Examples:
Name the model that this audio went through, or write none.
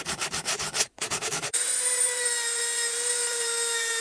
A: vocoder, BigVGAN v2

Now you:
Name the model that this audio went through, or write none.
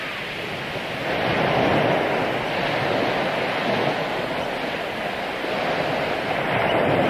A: none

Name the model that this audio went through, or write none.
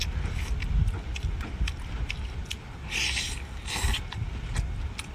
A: none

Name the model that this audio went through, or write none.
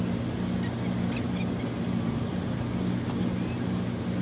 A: none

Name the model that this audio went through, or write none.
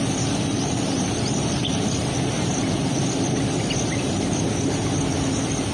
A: none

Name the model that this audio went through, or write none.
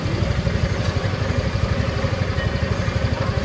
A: none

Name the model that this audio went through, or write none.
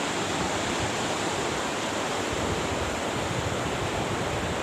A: vocoder, BigVGAN v2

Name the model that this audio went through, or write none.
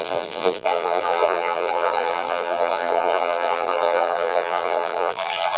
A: vocoder, BigVGAN v2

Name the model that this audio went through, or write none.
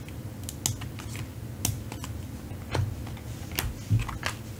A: none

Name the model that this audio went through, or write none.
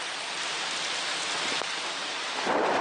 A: none